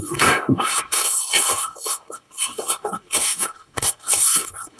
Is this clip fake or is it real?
fake